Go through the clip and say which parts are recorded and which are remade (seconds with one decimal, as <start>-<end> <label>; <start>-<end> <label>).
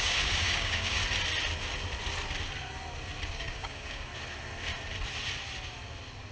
0.0-1.0 remade; 1.0-3.3 recorded; 3.3-4.1 remade; 4.1-6.3 recorded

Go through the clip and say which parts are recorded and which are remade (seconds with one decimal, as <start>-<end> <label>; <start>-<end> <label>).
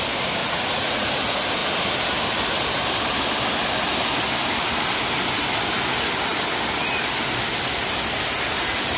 0.0-0.4 recorded; 0.4-1.1 remade; 1.1-9.0 recorded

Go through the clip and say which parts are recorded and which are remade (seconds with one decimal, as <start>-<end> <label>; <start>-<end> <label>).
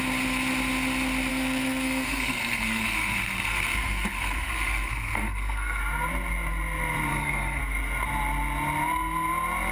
0.0-1.3 recorded; 1.3-5.8 remade; 5.8-7.1 recorded; 7.1-7.6 remade; 7.6-9.7 recorded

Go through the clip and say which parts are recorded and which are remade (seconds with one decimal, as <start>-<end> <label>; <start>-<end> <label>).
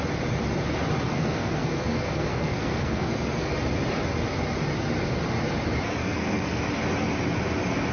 0.0-1.1 recorded; 1.1-3.5 remade; 3.5-6.0 recorded; 6.0-6.6 remade; 6.6-7.9 recorded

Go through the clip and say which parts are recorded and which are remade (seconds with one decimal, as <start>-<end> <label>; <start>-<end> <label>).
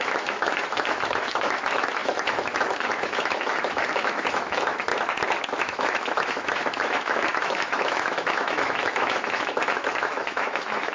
0.0-4.9 remade; 4.9-5.6 recorded; 5.6-10.9 remade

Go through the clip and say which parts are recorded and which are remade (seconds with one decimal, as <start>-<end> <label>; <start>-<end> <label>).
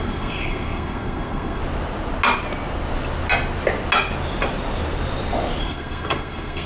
0.0-1.6 remade; 1.6-5.6 recorded; 5.6-6.7 remade